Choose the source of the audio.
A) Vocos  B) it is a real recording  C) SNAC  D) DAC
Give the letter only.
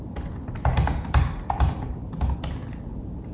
B